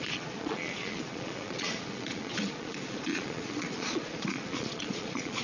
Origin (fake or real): fake